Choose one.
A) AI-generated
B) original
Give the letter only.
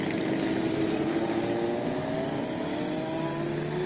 B